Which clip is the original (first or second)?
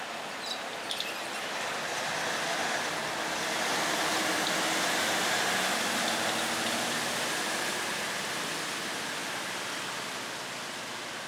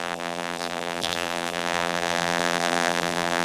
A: first